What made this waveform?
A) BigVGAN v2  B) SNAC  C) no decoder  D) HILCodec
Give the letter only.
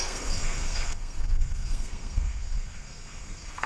B